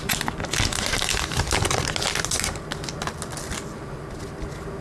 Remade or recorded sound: recorded